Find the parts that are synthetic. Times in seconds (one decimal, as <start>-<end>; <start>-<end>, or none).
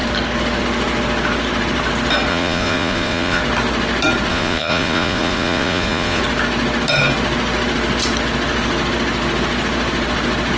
2.3-3.4; 4.3-6.2